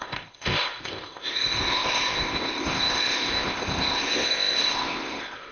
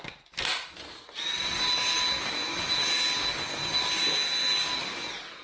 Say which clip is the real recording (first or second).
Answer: second